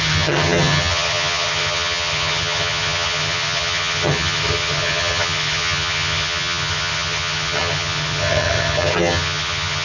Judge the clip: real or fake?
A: fake